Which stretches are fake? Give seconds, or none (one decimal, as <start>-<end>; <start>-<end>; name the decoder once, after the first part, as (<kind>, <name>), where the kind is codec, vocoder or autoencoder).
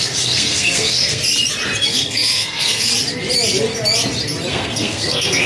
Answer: 0.0-1.2 (codec, SNAC); 1.9-2.9; 4.5-5.5